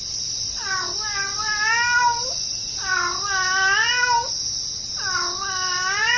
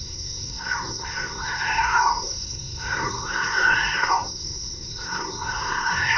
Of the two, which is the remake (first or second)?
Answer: second